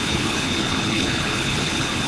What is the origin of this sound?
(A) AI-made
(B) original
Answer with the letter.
A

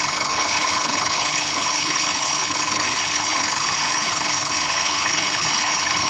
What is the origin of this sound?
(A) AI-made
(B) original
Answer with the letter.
A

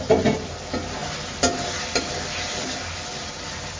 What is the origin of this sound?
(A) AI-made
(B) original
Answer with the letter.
B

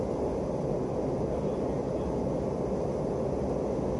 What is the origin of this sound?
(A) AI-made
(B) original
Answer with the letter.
B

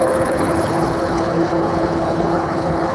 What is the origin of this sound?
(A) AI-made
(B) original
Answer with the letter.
A